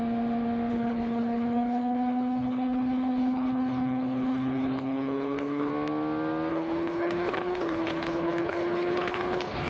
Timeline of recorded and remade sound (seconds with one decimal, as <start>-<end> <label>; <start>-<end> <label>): 0.0-0.7 recorded; 0.7-5.7 remade; 5.7-6.5 recorded; 6.5-9.7 remade